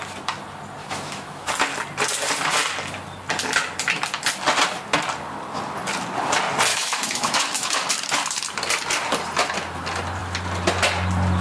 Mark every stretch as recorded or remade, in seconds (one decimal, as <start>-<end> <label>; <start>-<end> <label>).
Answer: 0.0-0.8 recorded; 0.8-1.5 remade; 1.5-6.7 recorded; 6.7-7.8 remade; 7.8-11.4 recorded